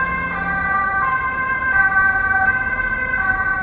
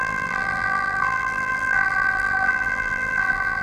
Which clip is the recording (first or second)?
first